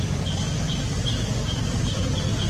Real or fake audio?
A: real